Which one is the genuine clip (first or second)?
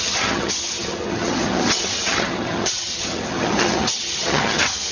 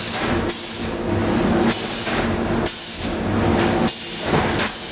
second